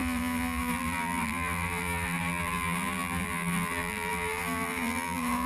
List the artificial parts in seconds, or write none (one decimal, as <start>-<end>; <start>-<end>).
0.0-5.5